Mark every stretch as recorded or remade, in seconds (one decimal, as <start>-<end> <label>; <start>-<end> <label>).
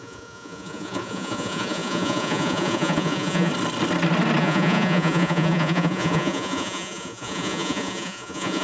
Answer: 0.0-3.5 remade; 3.5-4.4 recorded; 4.4-8.6 remade